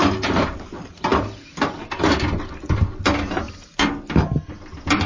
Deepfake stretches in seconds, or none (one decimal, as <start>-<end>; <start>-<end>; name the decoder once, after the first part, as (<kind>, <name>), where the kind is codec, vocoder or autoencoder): none